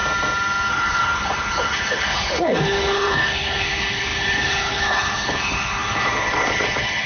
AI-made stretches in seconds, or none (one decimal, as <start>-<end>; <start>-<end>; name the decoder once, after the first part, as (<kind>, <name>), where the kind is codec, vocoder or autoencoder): 0.7-7.1 (codec, HILCodec)